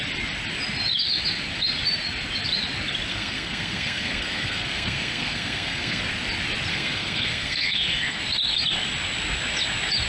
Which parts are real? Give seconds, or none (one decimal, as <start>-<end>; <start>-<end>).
0.0-3.1; 6.0-6.7; 8.2-10.1